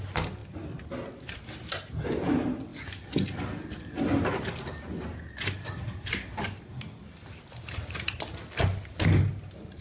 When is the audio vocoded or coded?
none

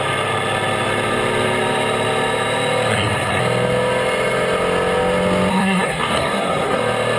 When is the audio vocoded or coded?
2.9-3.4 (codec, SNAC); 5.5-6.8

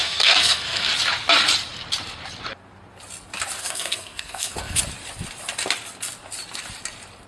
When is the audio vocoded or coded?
0.0-0.9 (codec, SNAC); 3.6-4.8

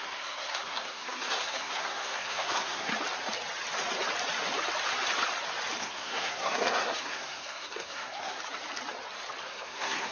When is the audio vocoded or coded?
0.0-2.9 (codec, SNAC); 5.8-8.4; 9.4-10.1

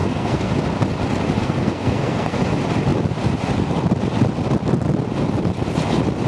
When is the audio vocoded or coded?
0.0-0.5 (codec, SNAC); 1.4-2.4

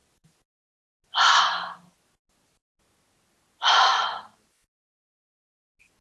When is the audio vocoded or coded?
none

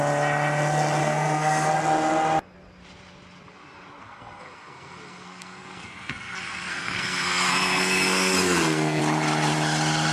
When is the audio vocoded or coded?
1.0-1.7 (codec, SNAC); 4.0-9.0